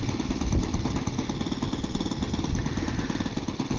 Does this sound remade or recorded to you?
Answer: recorded